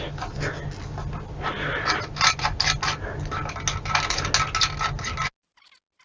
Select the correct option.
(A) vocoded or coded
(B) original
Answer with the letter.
B